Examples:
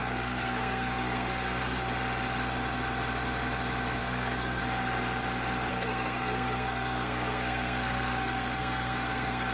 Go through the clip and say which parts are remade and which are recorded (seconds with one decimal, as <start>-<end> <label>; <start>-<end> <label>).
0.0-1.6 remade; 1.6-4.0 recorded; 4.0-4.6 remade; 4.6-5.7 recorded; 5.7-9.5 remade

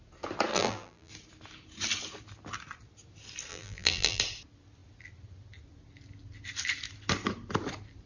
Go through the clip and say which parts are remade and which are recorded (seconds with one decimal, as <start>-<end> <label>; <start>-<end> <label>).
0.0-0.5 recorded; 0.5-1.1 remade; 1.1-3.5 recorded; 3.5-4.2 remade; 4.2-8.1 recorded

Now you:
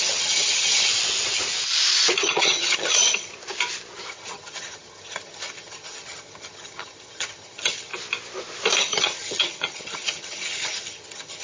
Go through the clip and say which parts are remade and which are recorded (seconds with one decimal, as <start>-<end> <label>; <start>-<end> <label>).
0.0-0.9 remade; 0.9-2.2 recorded; 2.2-3.3 remade; 3.3-4.1 recorded; 4.1-7.9 remade; 7.9-8.8 recorded; 8.8-11.4 remade